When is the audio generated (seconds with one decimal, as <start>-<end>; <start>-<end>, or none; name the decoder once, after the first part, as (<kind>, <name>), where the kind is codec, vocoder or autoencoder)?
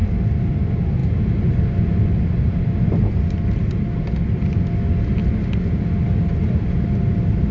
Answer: none